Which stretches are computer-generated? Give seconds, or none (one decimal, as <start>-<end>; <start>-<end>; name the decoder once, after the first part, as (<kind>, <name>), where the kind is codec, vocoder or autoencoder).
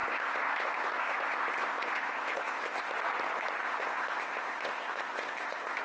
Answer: 0.0-2.9 (codec, ZipCodec); 3.6-5.8